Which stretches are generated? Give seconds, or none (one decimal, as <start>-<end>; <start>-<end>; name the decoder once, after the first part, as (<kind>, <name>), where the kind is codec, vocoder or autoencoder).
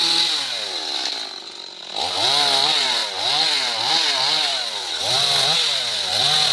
none